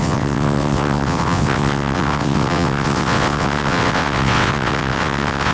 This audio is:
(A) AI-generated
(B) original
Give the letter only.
A